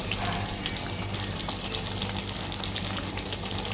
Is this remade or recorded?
recorded